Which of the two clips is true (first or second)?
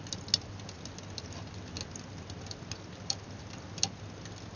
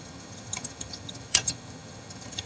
first